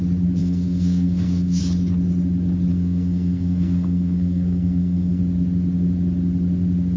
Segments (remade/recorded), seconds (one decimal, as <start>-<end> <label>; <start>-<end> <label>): 0.0-0.4 recorded; 0.4-1.6 remade; 1.6-2.7 recorded; 2.7-5.2 remade; 5.2-7.0 recorded